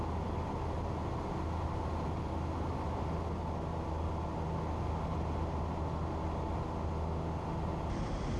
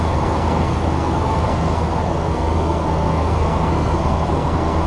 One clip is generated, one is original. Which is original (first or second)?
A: first